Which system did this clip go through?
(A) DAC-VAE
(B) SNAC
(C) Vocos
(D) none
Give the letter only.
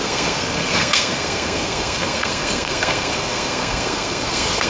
B